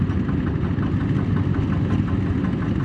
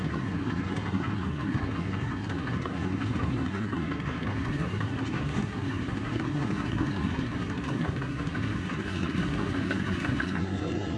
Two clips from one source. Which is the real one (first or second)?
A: first